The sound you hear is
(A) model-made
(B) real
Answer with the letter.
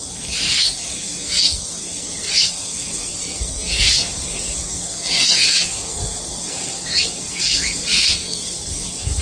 A